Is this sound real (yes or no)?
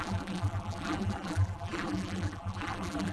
no